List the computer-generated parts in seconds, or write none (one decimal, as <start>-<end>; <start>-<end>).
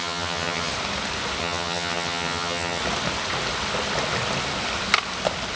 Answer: 0.0-0.7; 1.4-2.8